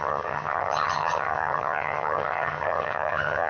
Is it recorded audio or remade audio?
remade